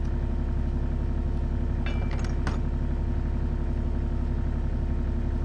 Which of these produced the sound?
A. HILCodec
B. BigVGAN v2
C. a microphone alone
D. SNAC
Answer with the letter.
C